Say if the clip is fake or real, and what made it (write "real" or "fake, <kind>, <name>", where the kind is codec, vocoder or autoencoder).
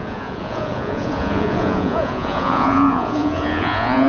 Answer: fake, vocoder, Vocos